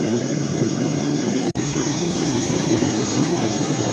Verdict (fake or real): fake